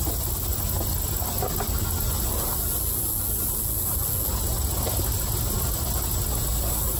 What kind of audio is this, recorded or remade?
recorded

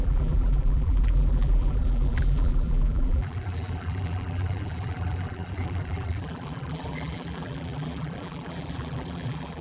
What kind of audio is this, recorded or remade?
remade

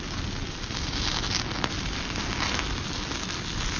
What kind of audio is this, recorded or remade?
recorded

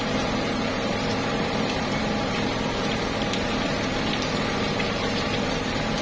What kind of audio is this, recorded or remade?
remade